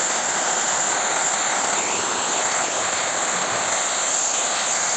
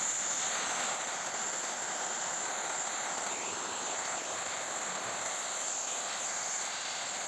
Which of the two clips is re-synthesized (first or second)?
second